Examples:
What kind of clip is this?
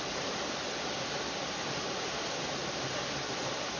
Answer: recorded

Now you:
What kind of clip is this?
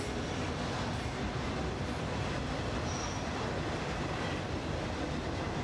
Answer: recorded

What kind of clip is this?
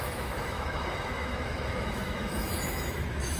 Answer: remade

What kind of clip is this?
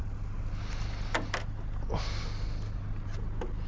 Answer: recorded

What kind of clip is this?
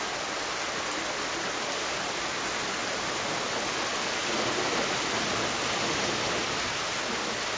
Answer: recorded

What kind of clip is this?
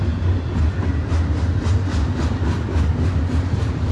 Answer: recorded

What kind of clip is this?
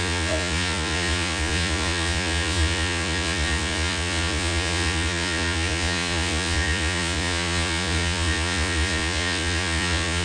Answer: remade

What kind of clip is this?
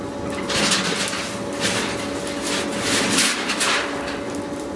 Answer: recorded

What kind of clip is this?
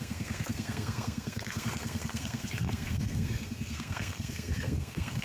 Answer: remade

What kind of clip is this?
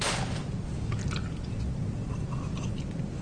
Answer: recorded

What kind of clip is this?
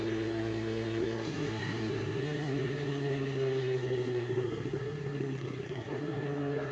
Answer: remade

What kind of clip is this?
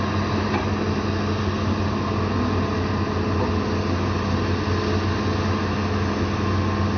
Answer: recorded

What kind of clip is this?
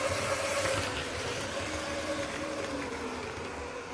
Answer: recorded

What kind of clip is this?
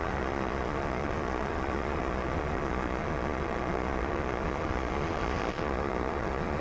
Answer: remade